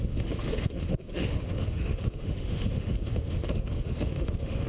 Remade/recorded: remade